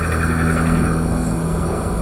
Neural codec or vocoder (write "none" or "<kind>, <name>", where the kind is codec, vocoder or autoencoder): codec, SNAC